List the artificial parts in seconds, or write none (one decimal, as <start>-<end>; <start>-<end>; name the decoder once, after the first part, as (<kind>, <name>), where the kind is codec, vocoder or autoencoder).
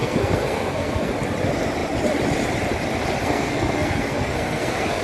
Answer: 0.0-1.1 (codec, SNAC); 3.2-5.0